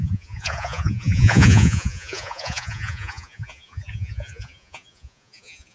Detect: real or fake fake